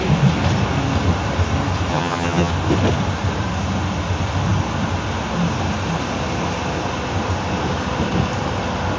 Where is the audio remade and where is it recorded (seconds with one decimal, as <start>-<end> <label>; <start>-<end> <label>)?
0.0-1.9 recorded; 1.9-2.5 remade; 2.5-9.0 recorded